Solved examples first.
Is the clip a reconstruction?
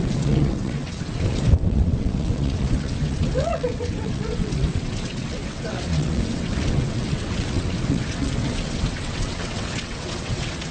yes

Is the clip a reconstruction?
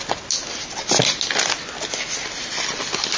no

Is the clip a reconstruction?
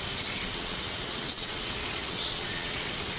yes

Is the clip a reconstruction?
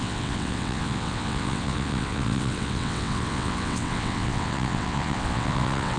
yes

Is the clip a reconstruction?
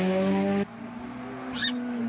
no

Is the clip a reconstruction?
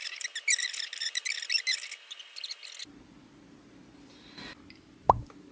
no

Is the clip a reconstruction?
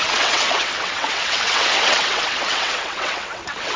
yes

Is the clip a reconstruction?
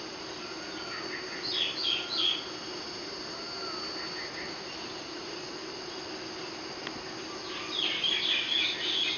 no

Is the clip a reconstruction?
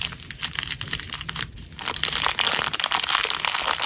no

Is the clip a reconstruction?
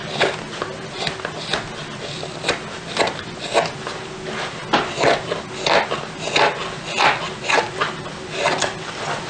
no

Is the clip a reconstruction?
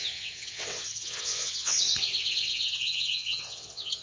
yes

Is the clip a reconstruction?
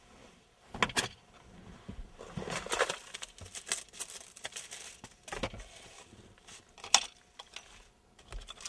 no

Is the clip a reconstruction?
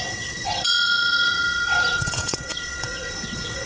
yes